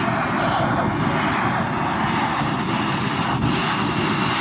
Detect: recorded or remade recorded